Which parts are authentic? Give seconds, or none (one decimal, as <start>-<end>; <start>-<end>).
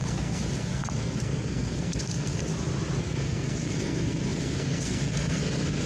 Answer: 2.5-3.0